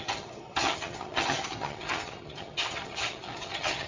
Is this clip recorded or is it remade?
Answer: remade